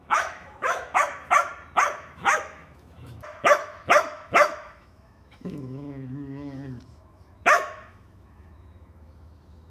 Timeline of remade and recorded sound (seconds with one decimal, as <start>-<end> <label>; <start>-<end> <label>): 0.0-1.5 remade; 1.5-2.0 recorded; 2.0-9.7 remade